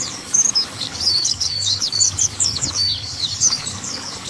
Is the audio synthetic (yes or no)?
yes